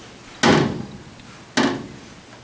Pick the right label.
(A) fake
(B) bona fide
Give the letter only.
B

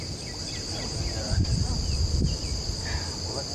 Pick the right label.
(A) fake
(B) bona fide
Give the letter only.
B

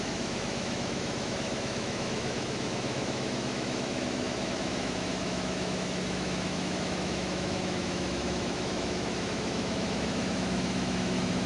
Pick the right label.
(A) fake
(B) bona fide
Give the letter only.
A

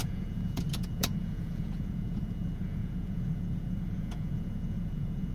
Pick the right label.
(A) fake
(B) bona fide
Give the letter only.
A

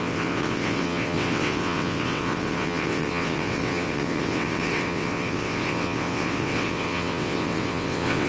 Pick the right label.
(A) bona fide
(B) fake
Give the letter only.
B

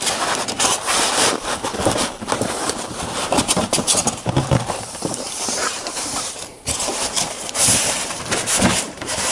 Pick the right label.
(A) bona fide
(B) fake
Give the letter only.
B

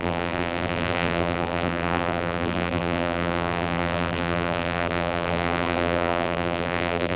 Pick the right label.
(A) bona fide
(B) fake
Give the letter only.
B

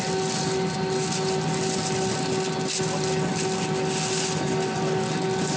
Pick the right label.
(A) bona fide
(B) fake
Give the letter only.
A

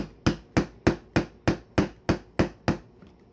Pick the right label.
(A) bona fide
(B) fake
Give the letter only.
A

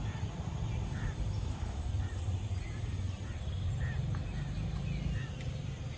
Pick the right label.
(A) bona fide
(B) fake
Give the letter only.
A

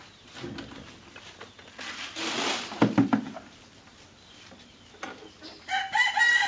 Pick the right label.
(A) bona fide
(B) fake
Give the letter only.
A